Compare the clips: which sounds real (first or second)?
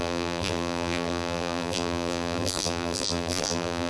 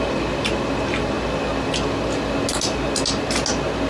second